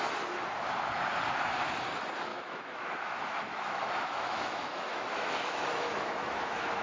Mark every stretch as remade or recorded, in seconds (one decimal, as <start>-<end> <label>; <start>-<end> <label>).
0.0-2.3 recorded; 2.3-6.8 remade